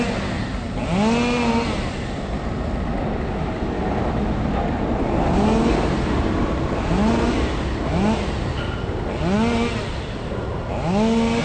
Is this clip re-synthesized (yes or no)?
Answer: no